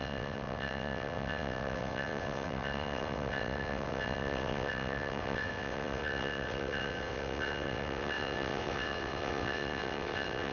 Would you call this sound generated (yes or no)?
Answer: yes